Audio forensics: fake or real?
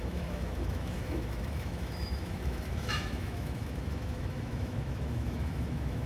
fake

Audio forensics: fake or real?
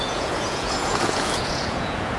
fake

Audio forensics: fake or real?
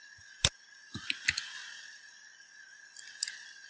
real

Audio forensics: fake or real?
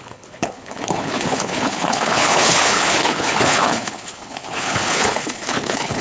fake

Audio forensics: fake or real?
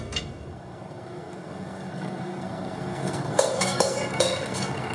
fake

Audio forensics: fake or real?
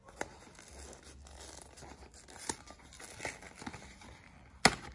real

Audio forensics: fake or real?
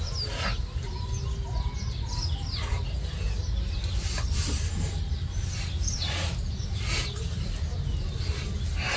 real